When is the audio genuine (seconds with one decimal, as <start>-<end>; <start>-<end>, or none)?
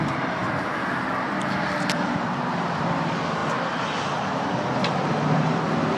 0.4-1.4; 3.4-4.9